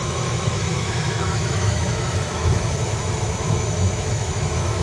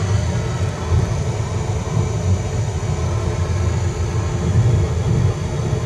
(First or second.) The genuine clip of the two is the second